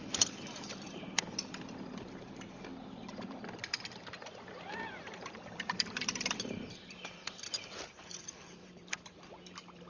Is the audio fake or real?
fake